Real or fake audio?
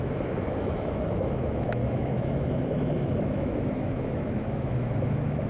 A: fake